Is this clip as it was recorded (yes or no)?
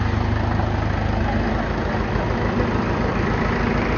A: yes